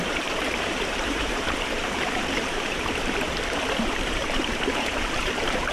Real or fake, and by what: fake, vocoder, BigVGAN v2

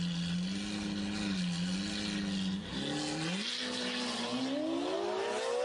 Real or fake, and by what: real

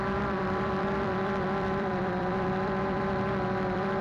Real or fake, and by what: fake, vocoder, BigVGAN v2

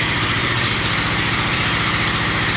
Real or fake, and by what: fake, vocoder, BigVGAN v2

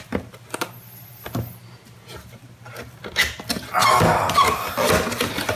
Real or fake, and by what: real